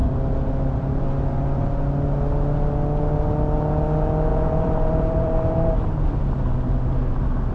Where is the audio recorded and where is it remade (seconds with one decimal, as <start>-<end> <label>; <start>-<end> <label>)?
0.0-4.3 recorded; 4.3-5.7 remade; 5.7-7.5 recorded